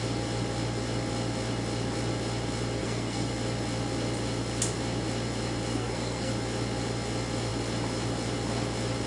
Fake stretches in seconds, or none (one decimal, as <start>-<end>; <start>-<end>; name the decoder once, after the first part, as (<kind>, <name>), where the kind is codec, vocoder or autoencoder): 2.8-3.3 (codec, SNAC); 5.7-6.3